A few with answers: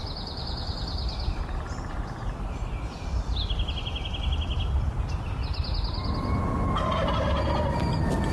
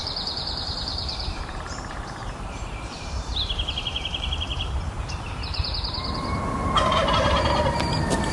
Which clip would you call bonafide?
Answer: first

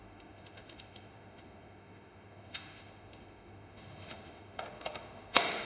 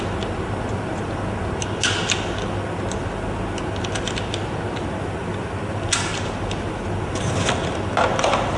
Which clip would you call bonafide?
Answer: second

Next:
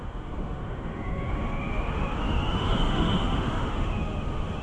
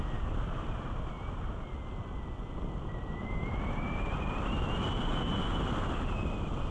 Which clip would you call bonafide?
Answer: second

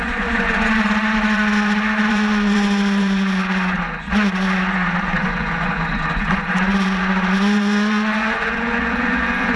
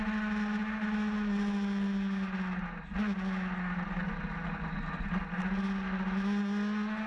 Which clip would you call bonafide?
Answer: second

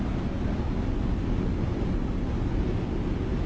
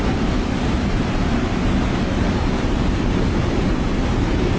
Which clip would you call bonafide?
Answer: first